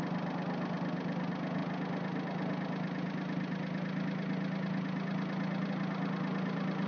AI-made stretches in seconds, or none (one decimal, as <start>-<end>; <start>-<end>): none